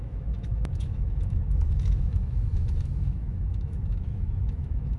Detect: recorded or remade remade